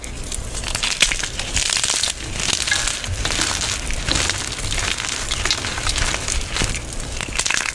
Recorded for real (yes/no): yes